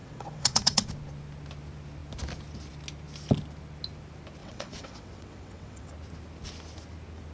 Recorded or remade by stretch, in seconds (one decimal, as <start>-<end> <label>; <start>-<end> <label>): 0.0-0.9 remade; 0.9-4.4 recorded; 4.4-5.9 remade; 5.9-7.3 recorded